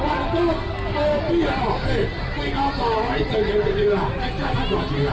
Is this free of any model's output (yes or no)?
yes